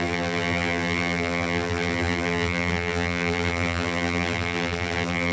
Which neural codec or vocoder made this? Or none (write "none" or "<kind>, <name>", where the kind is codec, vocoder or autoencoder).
vocoder, BigVGAN v2